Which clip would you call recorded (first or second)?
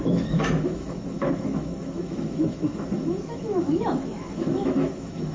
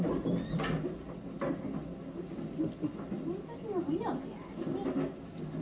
second